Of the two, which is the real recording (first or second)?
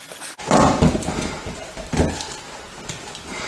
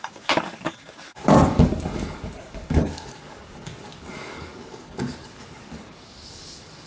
first